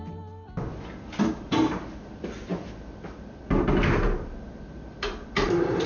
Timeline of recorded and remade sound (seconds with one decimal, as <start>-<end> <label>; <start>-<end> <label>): 0.0-5.9 recorded